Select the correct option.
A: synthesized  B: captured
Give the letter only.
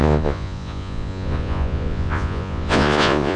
A